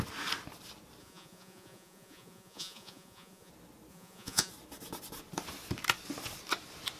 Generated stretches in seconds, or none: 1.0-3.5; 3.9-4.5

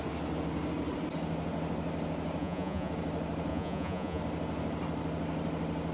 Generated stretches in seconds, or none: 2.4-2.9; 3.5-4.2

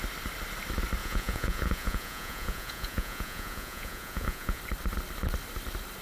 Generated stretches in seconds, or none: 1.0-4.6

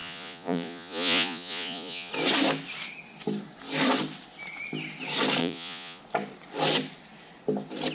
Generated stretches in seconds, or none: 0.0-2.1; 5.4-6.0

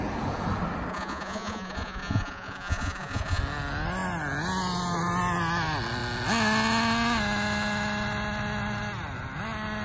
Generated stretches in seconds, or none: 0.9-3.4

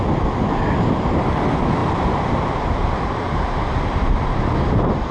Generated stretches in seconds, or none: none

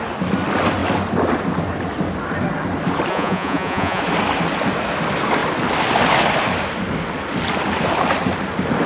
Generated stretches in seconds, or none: 3.1-4.0

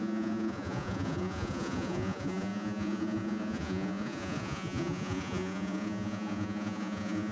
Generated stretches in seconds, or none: 0.0-7.3